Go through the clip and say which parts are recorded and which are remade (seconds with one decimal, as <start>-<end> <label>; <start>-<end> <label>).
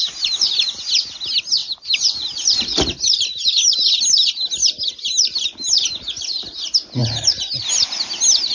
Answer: 0.0-1.6 recorded; 1.6-4.0 remade; 4.0-8.5 recorded